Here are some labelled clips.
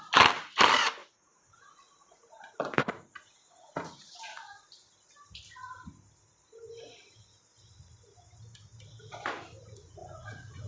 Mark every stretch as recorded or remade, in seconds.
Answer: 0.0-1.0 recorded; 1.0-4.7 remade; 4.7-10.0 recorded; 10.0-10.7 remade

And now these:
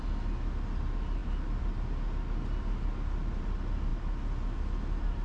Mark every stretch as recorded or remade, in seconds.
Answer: 0.0-5.2 recorded

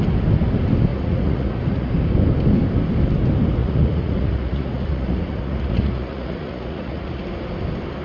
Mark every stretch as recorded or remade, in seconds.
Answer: 0.0-0.9 recorded; 0.9-1.9 remade; 1.9-3.6 recorded; 3.6-7.2 remade; 7.2-8.0 recorded

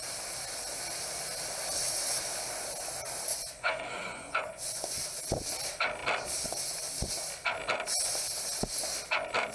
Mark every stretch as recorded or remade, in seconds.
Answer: 0.0-3.3 recorded; 3.3-4.8 remade; 4.8-9.5 recorded